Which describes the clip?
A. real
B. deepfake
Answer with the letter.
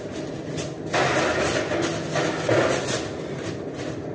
A